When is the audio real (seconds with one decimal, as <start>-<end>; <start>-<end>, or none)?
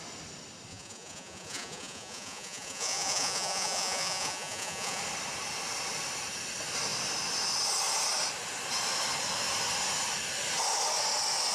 0.0-0.7; 5.0-11.5